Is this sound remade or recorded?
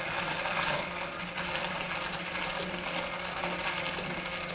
recorded